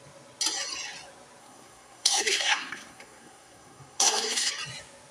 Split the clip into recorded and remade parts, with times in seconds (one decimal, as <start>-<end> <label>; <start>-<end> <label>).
0.0-1.4 recorded; 1.4-4.5 remade; 4.5-5.1 recorded